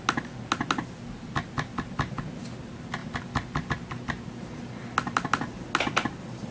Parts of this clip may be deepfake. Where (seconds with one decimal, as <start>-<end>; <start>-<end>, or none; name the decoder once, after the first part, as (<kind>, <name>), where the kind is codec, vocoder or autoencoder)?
none